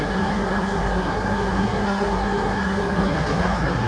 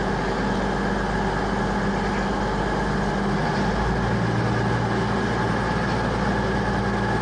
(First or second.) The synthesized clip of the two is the first